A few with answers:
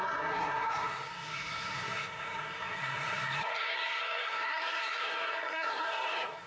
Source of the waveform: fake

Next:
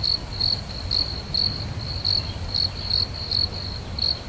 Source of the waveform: real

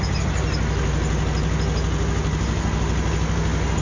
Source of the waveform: real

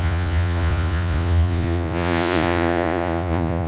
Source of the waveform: fake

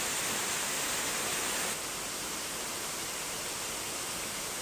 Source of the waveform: real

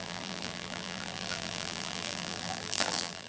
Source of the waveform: fake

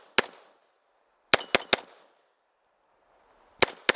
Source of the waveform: real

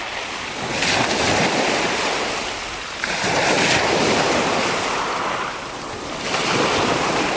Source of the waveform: real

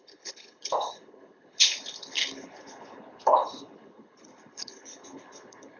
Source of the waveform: fake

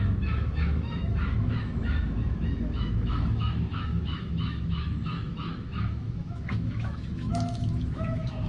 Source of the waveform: fake